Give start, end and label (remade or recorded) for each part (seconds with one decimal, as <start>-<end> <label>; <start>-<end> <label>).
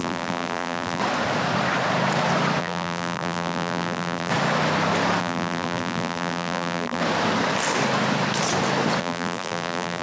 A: 0.0-1.0 remade; 1.0-2.6 recorded; 2.6-4.3 remade; 4.3-5.2 recorded; 5.2-7.0 remade; 7.0-9.0 recorded; 9.0-10.0 remade